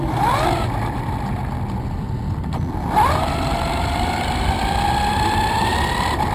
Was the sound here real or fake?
real